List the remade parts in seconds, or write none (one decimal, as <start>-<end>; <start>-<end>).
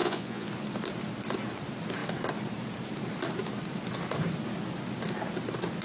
0.0-0.5